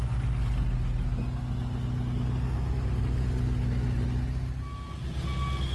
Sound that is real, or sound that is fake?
real